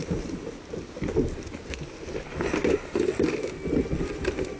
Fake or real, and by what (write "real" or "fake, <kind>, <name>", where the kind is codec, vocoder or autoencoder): real